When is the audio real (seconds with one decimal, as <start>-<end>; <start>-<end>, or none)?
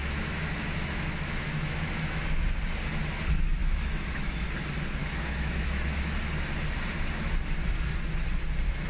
2.2-3.6; 4.5-5.0; 6.2-8.9